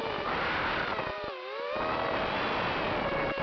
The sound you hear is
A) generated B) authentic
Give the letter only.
B